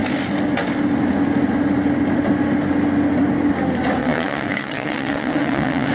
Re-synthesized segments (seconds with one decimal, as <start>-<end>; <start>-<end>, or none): 4.0-5.9